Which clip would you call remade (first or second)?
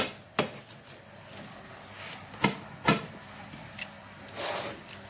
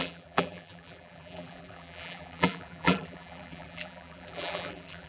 second